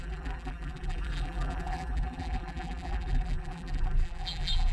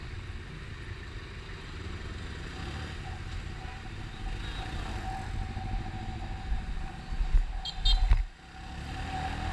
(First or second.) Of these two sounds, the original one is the second